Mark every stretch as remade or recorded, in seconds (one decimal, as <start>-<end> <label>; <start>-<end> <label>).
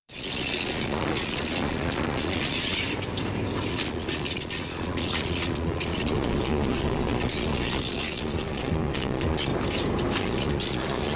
0.0-2.8 remade; 2.8-3.7 recorded; 3.7-9.5 remade; 9.5-10.2 recorded; 10.2-11.2 remade